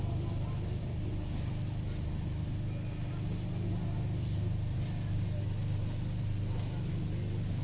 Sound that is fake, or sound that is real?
real